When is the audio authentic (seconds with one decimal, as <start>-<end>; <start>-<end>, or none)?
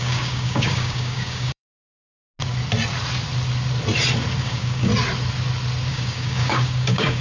1.9-4.4; 4.9-5.9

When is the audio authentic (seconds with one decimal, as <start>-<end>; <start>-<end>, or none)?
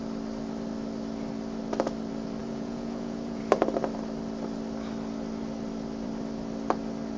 0.0-2.4; 3.4-7.2